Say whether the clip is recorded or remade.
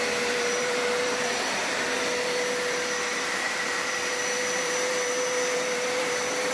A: remade